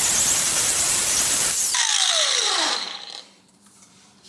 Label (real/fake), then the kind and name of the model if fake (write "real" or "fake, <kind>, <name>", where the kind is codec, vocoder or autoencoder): fake, vocoder, BigVGAN v2